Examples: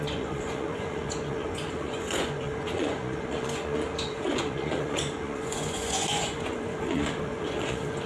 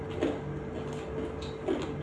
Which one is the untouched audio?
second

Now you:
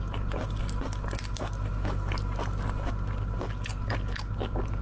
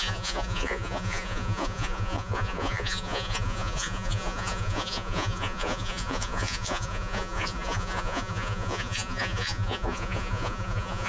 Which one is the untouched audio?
first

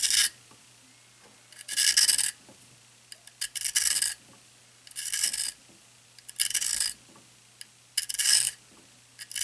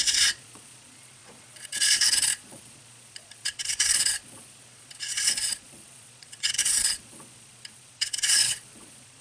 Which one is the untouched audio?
first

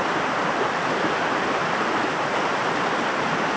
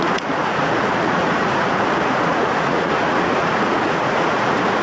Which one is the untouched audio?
first